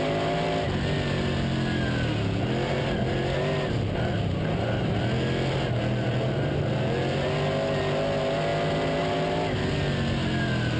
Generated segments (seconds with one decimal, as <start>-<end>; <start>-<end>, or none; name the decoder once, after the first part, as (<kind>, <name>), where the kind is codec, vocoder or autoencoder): none